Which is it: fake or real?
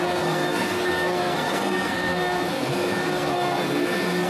fake